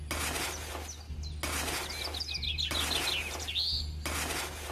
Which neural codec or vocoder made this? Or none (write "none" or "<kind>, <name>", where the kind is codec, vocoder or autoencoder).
none